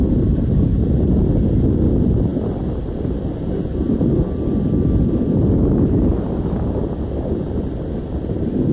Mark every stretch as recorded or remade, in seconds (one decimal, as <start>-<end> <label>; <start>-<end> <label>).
0.0-4.1 recorded; 4.1-4.6 remade; 4.6-8.7 recorded